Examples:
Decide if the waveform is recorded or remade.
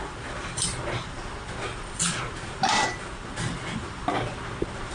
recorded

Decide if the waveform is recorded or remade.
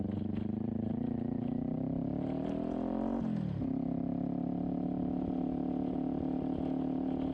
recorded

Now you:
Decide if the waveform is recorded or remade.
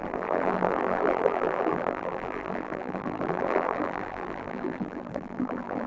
remade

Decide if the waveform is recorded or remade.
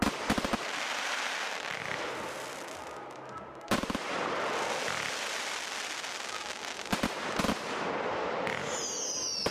recorded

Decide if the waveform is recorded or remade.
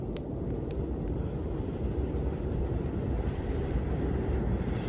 remade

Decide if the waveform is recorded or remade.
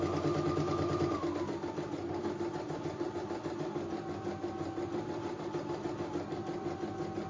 recorded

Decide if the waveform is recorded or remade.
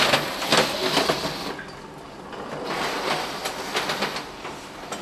recorded